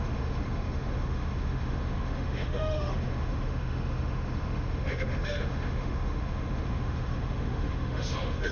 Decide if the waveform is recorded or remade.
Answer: remade